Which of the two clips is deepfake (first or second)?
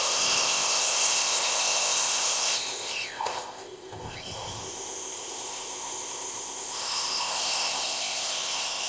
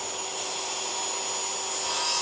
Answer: first